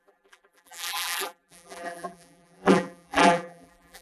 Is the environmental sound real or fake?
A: fake